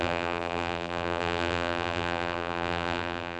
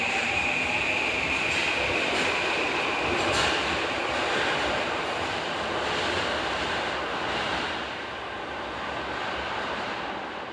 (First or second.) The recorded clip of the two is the second